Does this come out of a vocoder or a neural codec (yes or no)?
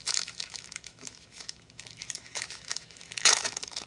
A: yes